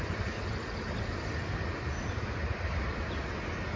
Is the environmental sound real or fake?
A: real